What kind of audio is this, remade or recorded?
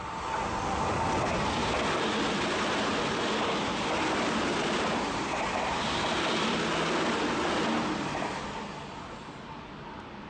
recorded